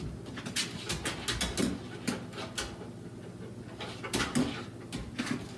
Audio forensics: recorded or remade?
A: recorded